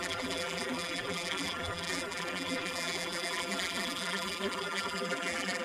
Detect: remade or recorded remade